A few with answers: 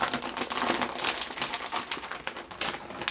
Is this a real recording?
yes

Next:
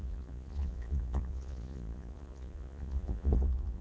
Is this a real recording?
no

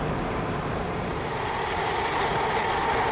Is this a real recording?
yes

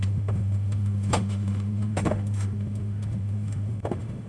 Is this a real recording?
no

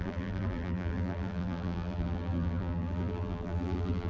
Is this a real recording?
no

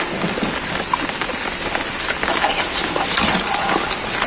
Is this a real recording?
yes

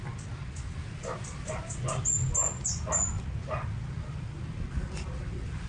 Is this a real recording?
yes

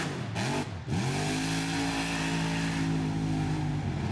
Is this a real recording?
yes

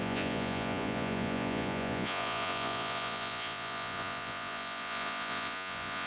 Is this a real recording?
no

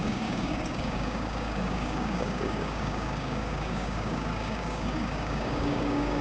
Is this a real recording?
no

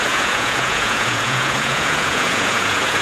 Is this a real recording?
no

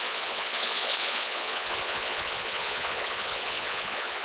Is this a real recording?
no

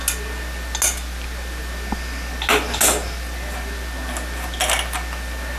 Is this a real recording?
yes